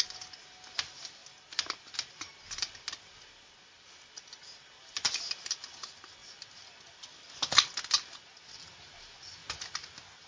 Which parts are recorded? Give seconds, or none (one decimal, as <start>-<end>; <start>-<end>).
0.0-10.3